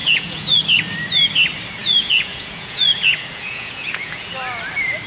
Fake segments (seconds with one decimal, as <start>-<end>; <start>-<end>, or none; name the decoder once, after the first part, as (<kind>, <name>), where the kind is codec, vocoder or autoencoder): 0.0-0.6 (vocoder, Vocos); 1.8-4.3